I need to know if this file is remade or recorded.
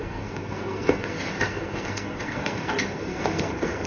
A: remade